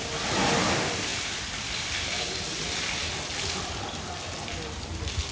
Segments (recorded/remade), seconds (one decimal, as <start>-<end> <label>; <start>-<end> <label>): 0.0-5.3 remade